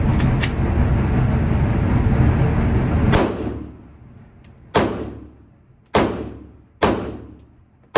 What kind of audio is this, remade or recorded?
recorded